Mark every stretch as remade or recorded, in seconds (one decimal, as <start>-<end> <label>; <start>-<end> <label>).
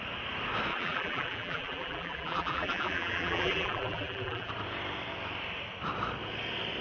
0.0-0.7 recorded; 0.7-4.5 remade; 4.5-6.8 recorded